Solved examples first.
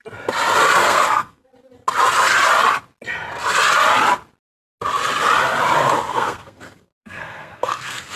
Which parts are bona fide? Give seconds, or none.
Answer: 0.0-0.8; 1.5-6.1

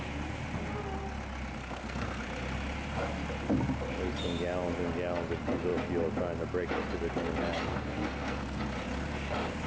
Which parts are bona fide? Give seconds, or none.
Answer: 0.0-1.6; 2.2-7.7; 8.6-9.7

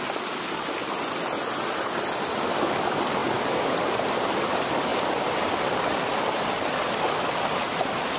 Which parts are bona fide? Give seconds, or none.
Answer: 0.0-8.2

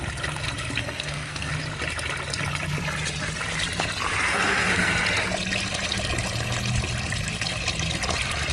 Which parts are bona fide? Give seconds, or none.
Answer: 0.0-0.8; 1.5-4.3; 4.9-8.5

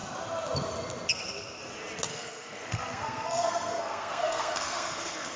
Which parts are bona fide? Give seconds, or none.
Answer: 0.0-2.1